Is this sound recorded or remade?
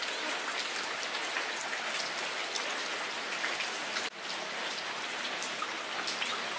recorded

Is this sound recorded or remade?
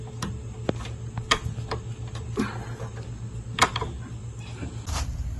recorded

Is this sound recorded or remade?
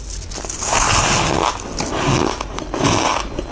recorded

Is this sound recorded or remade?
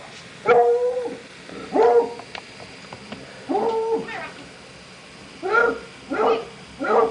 recorded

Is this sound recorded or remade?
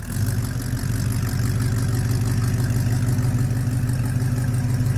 recorded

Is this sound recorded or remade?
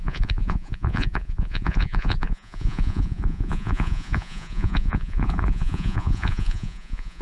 remade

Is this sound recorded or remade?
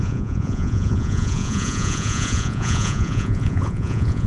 remade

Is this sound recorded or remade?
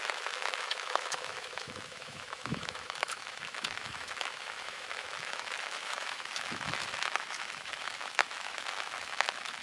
remade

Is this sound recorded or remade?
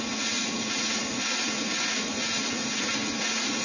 remade